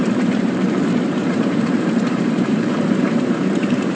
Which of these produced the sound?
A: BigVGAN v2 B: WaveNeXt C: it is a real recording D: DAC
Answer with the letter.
A